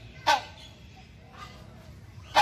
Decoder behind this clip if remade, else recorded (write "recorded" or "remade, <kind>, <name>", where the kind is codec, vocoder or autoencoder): recorded